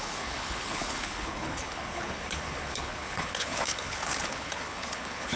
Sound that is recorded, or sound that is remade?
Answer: remade